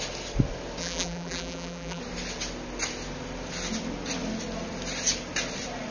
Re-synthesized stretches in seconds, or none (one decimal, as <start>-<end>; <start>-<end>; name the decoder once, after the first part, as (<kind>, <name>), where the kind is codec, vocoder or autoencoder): 0.8-2.0 (vocoder, BigVGAN v2)